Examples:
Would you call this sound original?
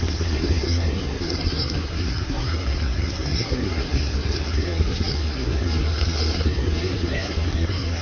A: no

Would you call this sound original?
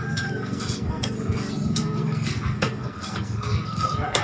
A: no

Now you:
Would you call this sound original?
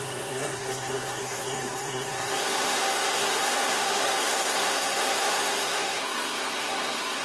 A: no